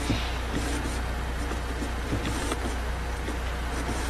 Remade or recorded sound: recorded